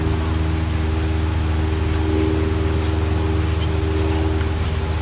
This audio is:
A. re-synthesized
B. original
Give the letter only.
B